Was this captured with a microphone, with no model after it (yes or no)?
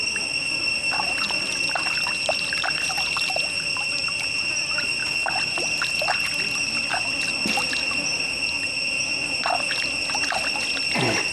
yes